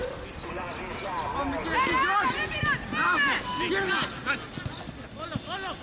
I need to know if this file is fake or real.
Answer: real